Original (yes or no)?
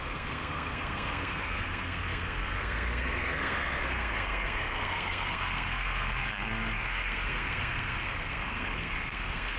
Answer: no